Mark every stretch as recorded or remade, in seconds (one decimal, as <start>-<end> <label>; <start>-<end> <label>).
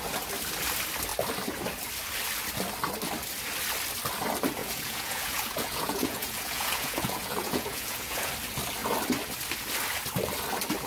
0.0-4.6 recorded; 4.6-8.3 remade; 8.3-10.9 recorded